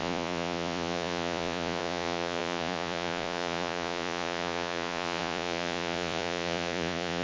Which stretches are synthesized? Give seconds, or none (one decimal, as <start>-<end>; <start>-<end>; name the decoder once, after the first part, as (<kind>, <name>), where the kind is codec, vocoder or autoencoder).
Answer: 0.0-7.2 (vocoder, Vocos)